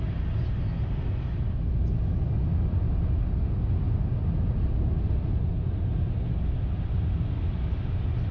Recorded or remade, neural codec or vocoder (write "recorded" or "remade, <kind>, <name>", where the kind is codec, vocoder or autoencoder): recorded